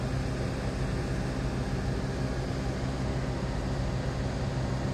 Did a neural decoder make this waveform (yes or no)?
no